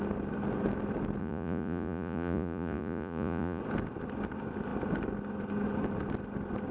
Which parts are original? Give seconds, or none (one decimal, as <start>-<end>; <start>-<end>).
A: 0.0-1.2; 3.6-6.7